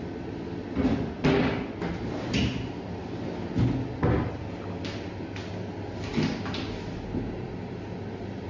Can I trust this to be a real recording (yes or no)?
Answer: yes